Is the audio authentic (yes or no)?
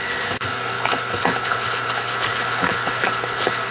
no